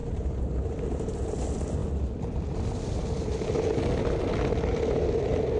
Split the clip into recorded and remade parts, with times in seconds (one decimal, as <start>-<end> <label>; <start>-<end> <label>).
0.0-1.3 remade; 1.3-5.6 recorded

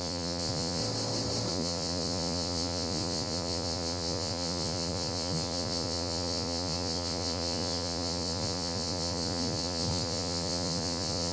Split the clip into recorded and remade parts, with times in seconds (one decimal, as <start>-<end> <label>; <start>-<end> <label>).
0.0-0.8 remade; 0.8-1.5 recorded; 1.5-11.3 remade

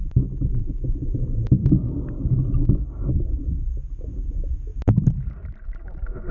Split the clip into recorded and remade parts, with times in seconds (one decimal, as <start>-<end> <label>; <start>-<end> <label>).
0.0-1.6 recorded; 1.6-2.6 remade; 2.6-6.3 recorded

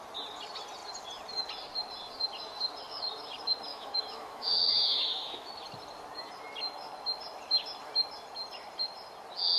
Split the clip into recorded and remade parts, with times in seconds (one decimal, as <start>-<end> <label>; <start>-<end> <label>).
0.0-3.7 recorded; 3.7-5.5 remade; 5.5-9.6 recorded

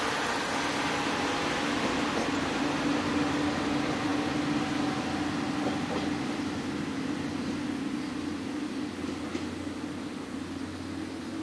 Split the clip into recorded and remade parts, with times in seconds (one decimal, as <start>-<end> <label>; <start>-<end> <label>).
0.0-11.4 recorded

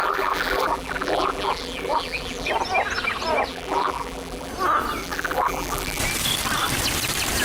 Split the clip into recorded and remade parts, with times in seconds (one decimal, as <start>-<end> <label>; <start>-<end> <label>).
0.0-2.5 remade; 2.5-3.5 recorded; 3.5-4.5 remade; 4.5-5.0 recorded; 5.0-6.0 remade; 6.0-7.4 recorded

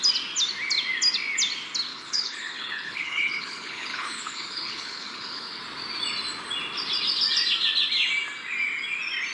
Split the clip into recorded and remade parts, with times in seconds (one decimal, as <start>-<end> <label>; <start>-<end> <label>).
0.0-1.9 recorded; 1.9-5.6 remade; 5.6-9.3 recorded

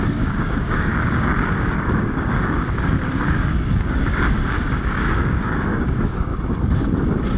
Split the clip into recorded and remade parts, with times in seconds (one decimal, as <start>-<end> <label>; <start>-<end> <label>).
0.0-6.3 remade; 6.3-7.4 recorded